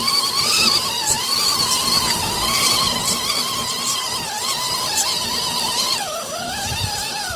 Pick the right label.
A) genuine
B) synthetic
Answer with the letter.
A